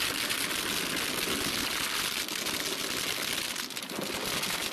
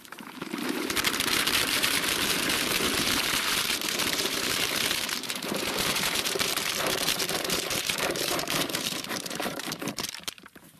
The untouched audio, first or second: first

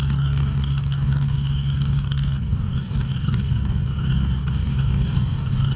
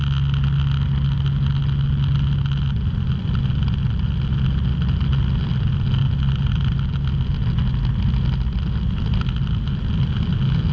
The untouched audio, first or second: second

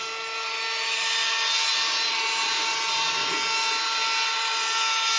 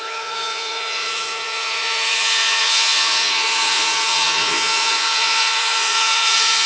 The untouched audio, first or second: first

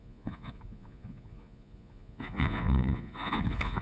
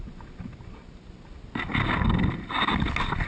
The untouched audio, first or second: second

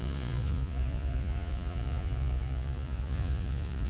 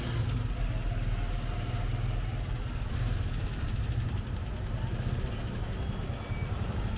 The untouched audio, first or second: second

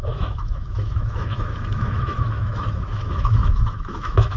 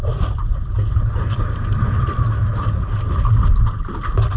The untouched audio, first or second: second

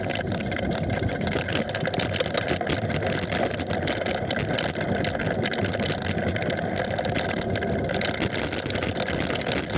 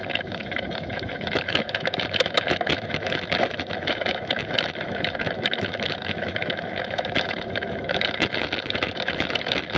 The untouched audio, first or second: first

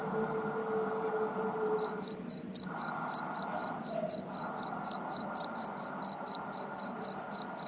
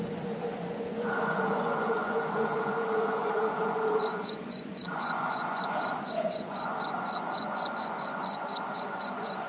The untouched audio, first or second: first